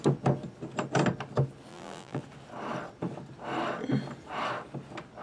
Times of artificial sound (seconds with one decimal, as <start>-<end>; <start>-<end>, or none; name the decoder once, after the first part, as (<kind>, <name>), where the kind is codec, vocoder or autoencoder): 1.7-2.2 (vocoder, BigVGAN v2)